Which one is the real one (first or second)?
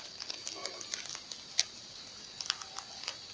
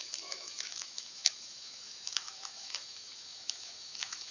first